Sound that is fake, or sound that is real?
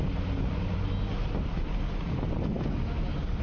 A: real